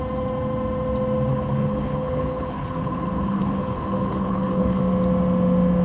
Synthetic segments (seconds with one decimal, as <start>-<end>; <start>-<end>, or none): 1.3-4.8

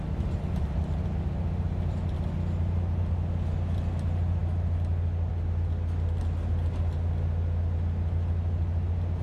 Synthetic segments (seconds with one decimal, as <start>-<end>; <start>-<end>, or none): none

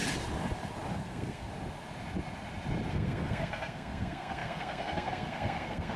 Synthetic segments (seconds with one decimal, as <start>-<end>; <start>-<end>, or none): 0.9-1.5; 2.9-6.0

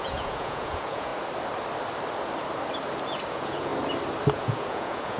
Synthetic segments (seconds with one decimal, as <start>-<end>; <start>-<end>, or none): 0.0-1.1; 3.3-3.7; 4.3-5.2